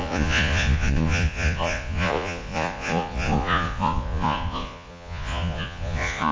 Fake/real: fake